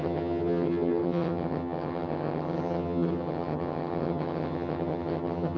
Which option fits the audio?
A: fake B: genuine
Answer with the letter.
A